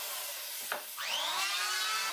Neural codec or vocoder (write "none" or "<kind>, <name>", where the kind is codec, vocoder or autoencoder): vocoder, BigVGAN v2